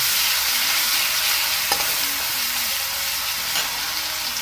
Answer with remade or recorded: recorded